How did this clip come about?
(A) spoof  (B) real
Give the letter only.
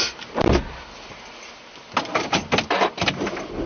B